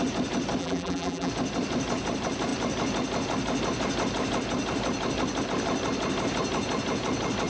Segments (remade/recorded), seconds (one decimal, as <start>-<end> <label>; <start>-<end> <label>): 0.0-0.6 recorded; 0.6-1.3 remade; 1.3-7.5 recorded